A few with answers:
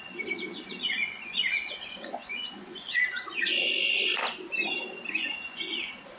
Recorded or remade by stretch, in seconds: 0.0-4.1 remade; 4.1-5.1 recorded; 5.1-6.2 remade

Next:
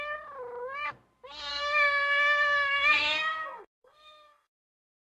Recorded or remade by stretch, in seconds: 0.0-1.5 recorded; 1.5-4.6 remade; 4.6-5.1 recorded

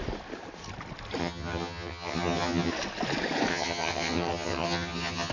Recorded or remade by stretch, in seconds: 0.0-1.2 recorded; 1.2-2.7 remade; 2.7-3.5 recorded; 3.5-5.3 remade

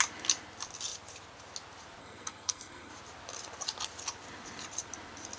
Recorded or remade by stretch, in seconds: 0.0-2.0 recorded; 2.0-2.9 remade; 2.9-5.4 recorded

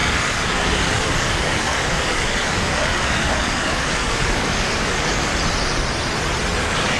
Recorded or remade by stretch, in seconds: 0.0-5.3 remade; 5.3-6.6 recorded; 6.6-7.0 remade

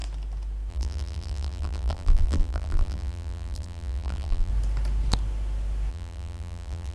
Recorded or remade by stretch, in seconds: 0.0-0.7 recorded; 0.7-4.5 remade; 4.5-5.9 recorded; 5.9-6.9 remade